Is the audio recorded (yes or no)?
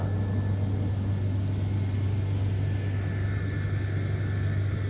yes